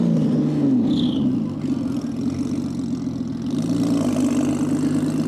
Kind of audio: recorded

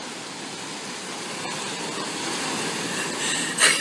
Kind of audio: recorded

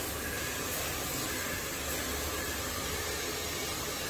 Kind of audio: recorded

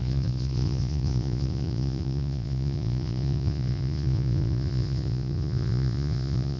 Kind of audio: remade